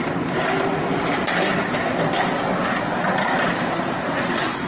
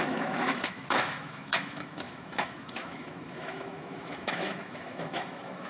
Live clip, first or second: first